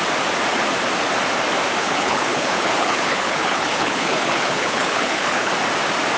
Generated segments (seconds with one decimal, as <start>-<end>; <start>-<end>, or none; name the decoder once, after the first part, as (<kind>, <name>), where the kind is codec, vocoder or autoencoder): 1.8-5.5 (codec, HILCodec)